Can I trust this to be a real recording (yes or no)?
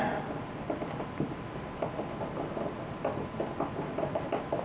yes